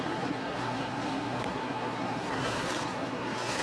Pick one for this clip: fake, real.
fake